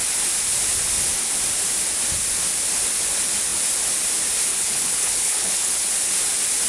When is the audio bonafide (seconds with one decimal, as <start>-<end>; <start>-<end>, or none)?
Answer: 0.0-4.5; 5.8-6.7